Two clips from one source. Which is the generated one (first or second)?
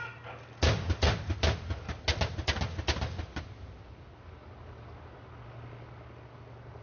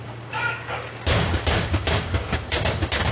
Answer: second